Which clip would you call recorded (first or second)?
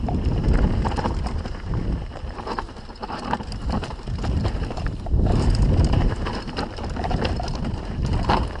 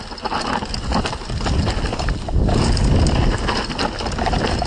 second